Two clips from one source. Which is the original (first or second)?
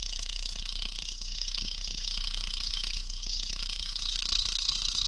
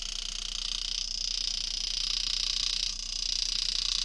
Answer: second